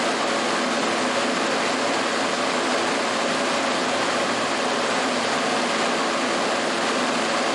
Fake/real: real